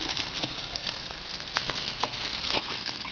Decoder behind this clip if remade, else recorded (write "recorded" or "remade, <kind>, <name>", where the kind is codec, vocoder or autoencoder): remade, codec, SNAC